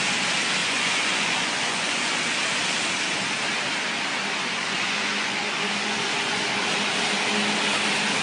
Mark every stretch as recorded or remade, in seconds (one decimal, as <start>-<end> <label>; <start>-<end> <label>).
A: 0.0-0.6 recorded; 0.6-2.2 remade; 2.2-4.2 recorded; 4.2-6.4 remade; 6.4-8.2 recorded

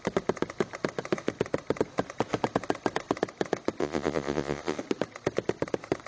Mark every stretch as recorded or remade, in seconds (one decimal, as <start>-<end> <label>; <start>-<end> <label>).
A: 0.0-3.8 recorded; 3.8-4.8 remade; 4.8-6.1 recorded

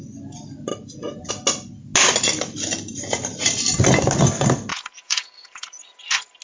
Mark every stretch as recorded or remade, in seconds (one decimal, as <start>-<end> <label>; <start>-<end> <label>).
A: 0.0-4.7 recorded; 4.7-6.0 remade; 6.0-6.4 recorded

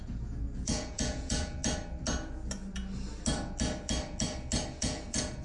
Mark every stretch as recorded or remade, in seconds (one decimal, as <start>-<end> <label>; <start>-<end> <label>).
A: 0.0-1.6 remade; 1.6-4.8 recorded; 4.8-5.4 remade